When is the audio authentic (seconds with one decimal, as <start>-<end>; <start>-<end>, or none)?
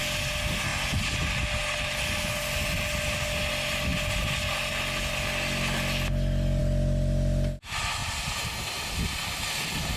0.0-10.0